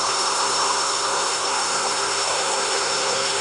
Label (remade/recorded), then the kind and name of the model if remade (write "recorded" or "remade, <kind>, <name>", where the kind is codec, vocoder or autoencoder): remade, codec, SNAC